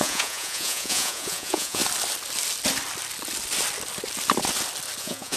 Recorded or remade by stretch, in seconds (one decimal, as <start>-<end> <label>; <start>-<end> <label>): 0.0-1.8 remade; 1.8-5.0 recorded; 5.0-5.4 remade